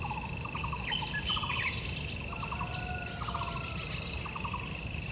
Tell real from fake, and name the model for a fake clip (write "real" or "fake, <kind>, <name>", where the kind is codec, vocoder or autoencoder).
real